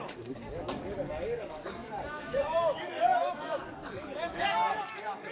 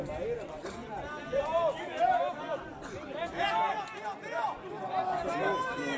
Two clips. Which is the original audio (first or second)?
second